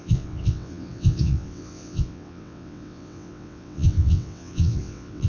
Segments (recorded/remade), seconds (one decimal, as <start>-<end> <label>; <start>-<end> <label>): 0.0-5.3 remade